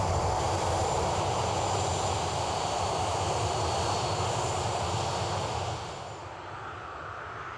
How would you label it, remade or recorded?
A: recorded